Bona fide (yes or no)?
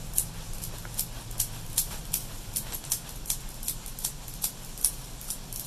yes